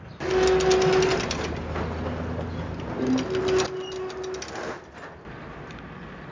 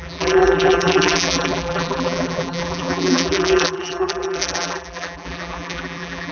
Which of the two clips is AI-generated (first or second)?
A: second